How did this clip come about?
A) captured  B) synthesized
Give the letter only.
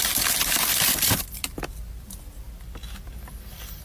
A